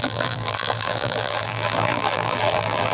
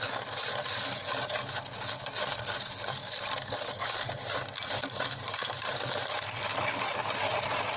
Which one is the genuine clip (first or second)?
second